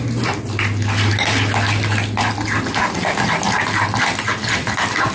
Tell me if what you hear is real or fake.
real